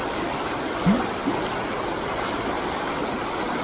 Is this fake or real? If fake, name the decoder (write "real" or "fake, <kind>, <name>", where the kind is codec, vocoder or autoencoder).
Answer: real